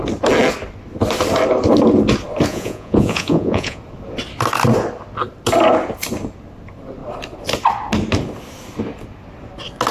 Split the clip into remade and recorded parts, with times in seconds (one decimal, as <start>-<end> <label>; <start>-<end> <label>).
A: 0.0-2.5 recorded; 2.5-3.8 remade; 3.8-9.9 recorded

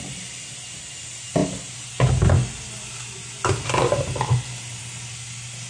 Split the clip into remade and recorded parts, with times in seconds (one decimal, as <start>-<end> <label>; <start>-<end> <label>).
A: 0.0-5.7 recorded

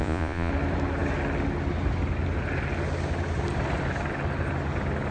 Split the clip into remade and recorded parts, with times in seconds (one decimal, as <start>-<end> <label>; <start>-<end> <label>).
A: 0.0-0.5 remade; 0.5-5.1 recorded

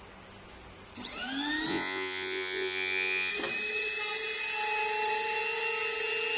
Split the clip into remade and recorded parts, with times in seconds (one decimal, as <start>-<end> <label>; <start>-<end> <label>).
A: 0.0-1.7 recorded; 1.7-3.3 remade; 3.3-6.4 recorded

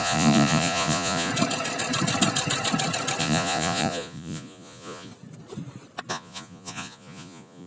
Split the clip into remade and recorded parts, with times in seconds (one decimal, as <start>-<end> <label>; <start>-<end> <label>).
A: 0.0-1.3 remade; 1.3-3.2 recorded; 3.2-5.1 remade; 5.1-6.1 recorded; 6.1-7.7 remade